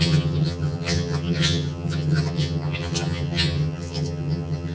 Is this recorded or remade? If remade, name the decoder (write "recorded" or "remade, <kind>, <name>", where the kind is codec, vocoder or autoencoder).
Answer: remade, vocoder, HiFi-GAN